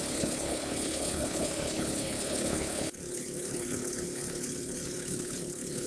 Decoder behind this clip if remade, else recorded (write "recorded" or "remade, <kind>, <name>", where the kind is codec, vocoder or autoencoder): remade, codec, HILCodec